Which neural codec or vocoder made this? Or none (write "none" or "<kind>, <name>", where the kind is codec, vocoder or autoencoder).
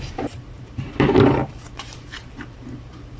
vocoder, BigVGAN v2